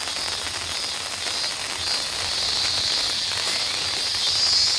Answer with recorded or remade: recorded